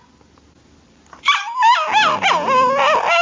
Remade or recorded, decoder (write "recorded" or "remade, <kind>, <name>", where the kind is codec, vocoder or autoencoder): recorded